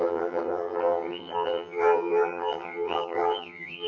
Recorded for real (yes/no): no